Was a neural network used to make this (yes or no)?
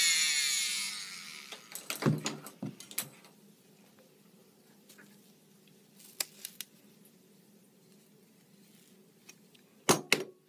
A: no